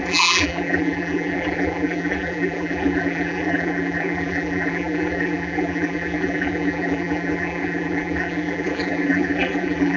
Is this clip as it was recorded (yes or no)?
no